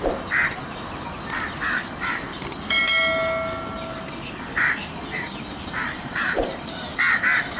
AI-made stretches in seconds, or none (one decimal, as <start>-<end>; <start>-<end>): 4.8-6.9